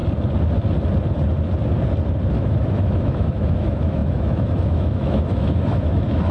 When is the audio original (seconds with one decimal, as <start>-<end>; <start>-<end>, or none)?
0.0-2.4